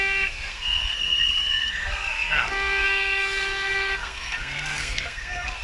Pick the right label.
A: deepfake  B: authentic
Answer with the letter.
A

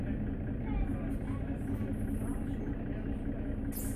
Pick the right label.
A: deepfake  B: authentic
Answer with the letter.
B